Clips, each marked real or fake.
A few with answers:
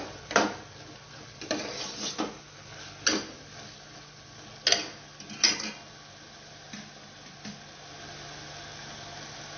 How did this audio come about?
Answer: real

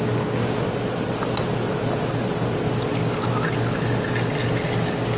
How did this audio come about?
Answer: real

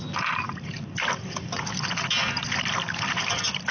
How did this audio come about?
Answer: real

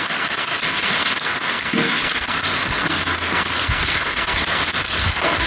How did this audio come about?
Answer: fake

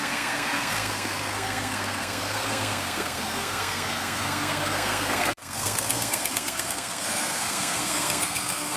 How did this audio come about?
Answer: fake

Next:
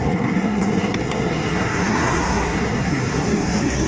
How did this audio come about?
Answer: fake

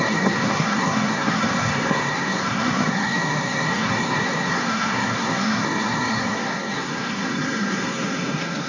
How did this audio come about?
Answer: fake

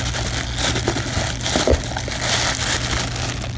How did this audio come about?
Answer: real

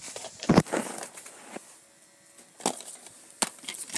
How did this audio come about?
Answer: real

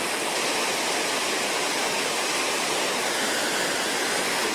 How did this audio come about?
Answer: real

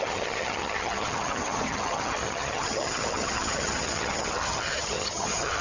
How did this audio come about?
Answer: fake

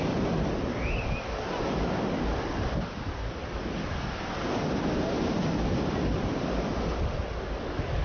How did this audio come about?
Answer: real